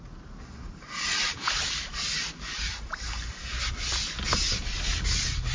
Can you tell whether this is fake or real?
real